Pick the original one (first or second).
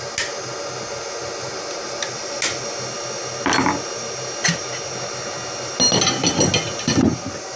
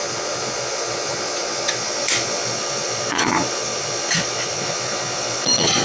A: first